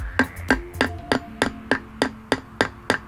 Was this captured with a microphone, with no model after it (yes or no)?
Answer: yes